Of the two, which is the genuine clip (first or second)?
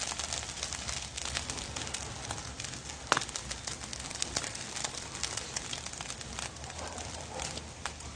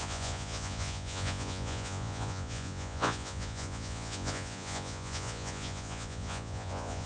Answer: first